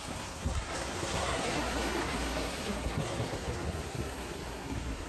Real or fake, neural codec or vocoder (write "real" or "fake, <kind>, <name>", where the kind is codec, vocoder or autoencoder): fake, codec, SNAC